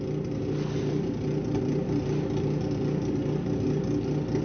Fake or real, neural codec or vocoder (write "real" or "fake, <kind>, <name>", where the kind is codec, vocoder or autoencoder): real